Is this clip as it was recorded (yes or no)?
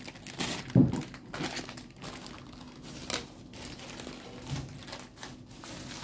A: yes